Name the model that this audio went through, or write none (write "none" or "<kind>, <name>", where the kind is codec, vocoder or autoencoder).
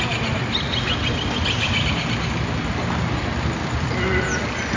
none